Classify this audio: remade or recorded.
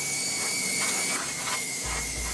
recorded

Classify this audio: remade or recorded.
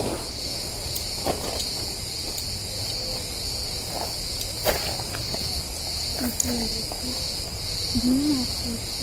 recorded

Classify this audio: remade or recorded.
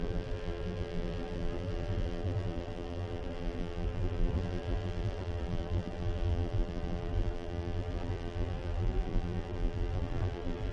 remade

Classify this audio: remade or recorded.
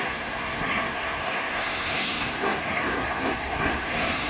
remade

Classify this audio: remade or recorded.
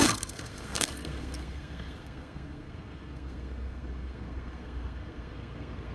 remade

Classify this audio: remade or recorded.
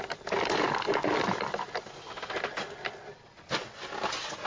recorded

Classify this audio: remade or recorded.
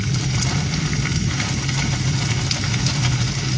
recorded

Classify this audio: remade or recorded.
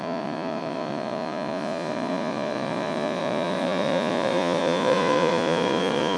remade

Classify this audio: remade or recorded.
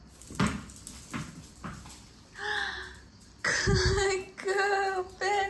recorded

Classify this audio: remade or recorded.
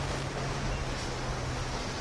recorded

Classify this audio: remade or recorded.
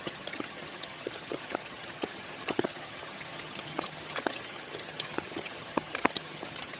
remade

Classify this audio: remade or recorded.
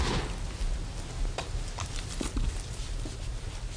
recorded